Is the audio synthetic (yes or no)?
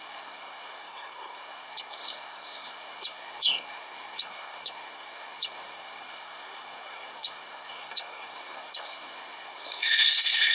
yes